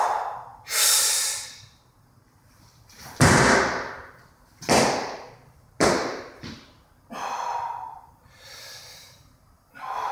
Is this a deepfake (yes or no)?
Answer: no